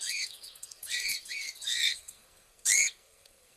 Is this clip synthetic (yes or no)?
yes